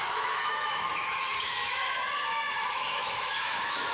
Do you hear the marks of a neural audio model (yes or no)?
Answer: yes